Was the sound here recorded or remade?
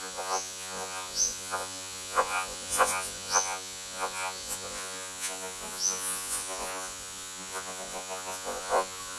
remade